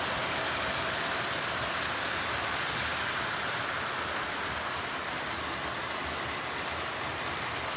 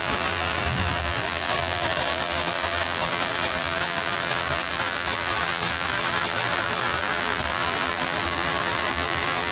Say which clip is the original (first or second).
first